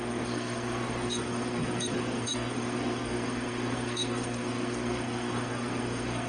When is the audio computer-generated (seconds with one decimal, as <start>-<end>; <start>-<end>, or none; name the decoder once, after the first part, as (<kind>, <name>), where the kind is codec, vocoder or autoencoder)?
0.0-6.3 (codec, SNAC)